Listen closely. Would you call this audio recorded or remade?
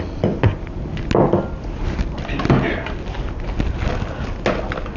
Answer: recorded